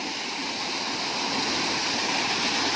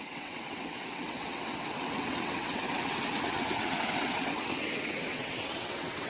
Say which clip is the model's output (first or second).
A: second